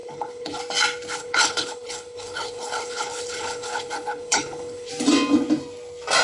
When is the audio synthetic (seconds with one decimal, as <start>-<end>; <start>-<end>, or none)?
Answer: 0.0-0.6; 1.2-4.9